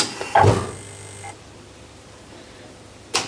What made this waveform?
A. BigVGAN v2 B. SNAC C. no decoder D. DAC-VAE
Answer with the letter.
C